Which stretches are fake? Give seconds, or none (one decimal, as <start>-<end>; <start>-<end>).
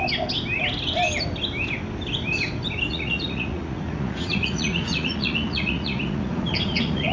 2.9-7.1